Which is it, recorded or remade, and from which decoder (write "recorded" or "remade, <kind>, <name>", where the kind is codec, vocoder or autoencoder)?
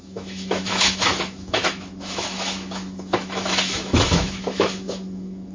remade, autoencoder, DAC-VAE